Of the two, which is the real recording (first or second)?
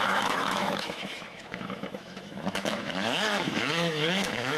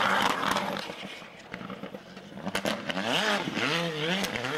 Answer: second